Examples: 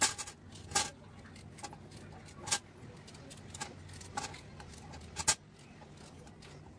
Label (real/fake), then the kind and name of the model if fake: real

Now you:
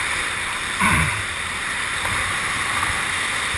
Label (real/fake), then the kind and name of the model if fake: fake, vocoder, BigVGAN v2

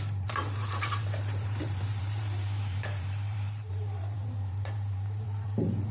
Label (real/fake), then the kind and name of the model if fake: fake, vocoder, BigVGAN v2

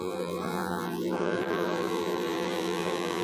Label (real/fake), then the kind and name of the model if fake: fake, vocoder, BigVGAN v2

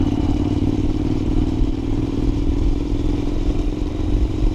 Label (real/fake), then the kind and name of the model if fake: fake, vocoder, BigVGAN v2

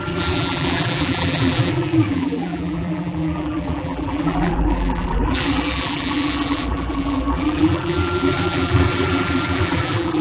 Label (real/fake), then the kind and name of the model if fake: fake, vocoder, BigVGAN v2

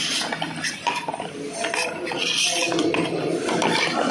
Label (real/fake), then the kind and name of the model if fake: real